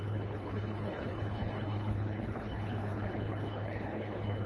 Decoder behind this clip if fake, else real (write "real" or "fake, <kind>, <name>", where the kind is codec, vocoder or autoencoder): fake, codec, HILCodec